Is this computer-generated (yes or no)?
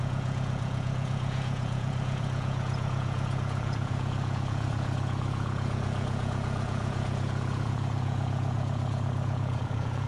yes